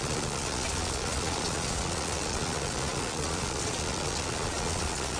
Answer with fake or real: fake